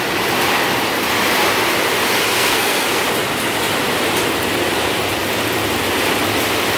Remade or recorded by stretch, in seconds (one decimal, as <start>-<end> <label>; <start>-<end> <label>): 0.0-2.3 recorded; 2.3-3.0 remade; 3.0-6.8 recorded

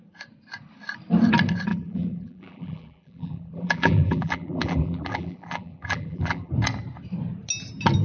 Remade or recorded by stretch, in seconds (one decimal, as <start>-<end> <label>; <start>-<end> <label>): 0.0-1.7 recorded; 1.7-6.5 remade; 6.5-8.0 recorded

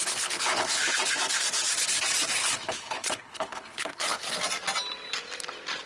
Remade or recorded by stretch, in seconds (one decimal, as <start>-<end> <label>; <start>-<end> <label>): 0.0-0.8 remade; 0.8-2.4 recorded; 2.4-4.3 remade; 4.3-5.9 recorded

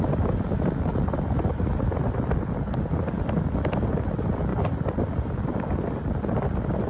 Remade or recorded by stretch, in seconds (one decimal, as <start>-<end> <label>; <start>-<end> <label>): 0.0-6.9 recorded